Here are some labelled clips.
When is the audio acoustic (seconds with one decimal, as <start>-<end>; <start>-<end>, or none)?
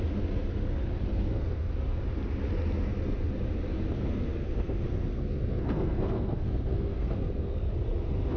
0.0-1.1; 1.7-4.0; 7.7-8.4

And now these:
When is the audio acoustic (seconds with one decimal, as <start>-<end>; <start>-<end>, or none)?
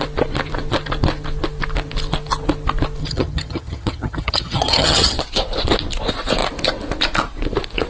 0.0-3.0; 5.2-7.9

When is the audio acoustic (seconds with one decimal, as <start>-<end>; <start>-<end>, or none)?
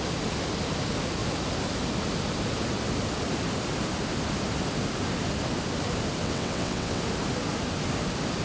0.0-6.2; 7.0-8.4